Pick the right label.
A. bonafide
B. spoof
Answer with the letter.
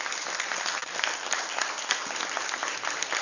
B